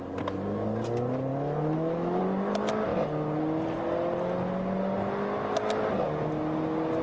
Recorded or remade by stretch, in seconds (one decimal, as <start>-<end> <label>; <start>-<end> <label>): 0.0-1.3 recorded; 1.3-2.2 remade; 2.2-7.0 recorded